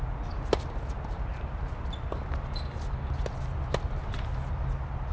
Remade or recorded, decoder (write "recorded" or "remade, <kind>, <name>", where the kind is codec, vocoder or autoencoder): recorded